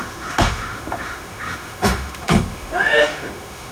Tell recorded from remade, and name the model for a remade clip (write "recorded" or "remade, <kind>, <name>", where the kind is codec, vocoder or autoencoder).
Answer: remade, autoencoder, DAC-VAE